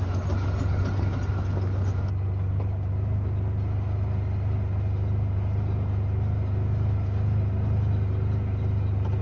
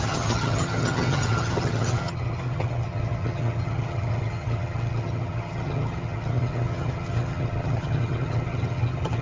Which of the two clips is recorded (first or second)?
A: first